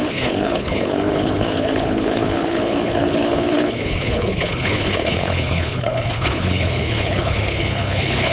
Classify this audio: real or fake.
fake